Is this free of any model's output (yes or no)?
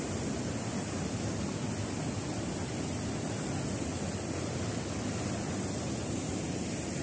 yes